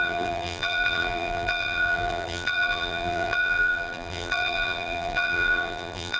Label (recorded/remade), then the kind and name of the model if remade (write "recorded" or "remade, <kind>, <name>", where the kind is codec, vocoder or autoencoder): remade, vocoder, BigVGAN v2